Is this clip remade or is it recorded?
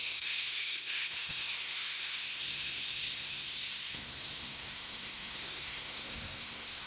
remade